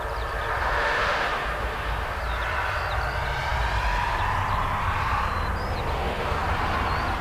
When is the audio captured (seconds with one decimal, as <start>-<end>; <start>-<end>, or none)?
0.0-0.6; 2.2-5.9; 6.5-7.2